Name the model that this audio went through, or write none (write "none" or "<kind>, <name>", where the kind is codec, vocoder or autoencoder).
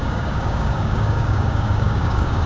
codec, DAC